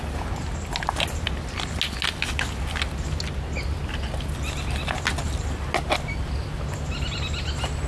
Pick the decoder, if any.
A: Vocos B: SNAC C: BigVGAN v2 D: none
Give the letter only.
D